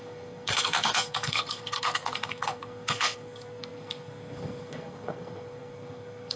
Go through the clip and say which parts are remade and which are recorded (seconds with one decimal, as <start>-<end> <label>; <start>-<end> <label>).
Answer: 0.0-6.4 remade